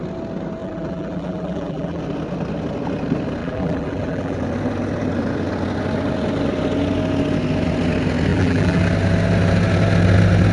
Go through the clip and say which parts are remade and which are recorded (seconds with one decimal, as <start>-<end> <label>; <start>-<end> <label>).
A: 0.0-0.6 recorded; 0.6-2.0 remade; 2.0-3.4 recorded; 3.4-4.4 remade; 4.4-8.3 recorded; 8.3-8.8 remade; 8.8-10.5 recorded